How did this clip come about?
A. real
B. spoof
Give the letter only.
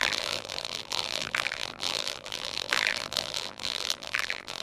B